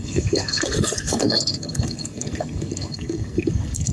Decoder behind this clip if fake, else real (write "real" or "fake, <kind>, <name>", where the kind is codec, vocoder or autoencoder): fake, codec, SNAC